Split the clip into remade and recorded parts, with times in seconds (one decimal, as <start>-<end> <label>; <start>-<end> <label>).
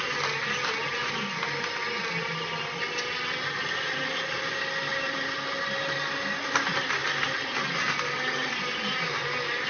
0.0-9.7 recorded